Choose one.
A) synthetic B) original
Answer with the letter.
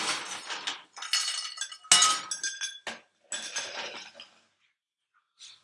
B